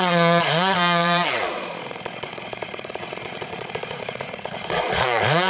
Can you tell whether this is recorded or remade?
remade